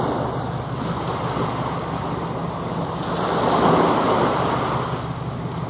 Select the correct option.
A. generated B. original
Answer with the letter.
B